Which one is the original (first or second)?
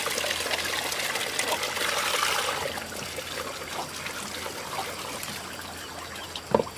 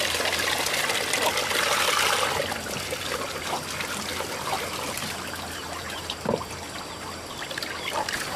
first